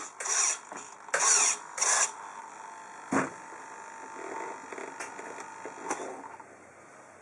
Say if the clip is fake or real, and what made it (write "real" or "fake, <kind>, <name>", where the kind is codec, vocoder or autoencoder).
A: fake, vocoder, BigVGAN v2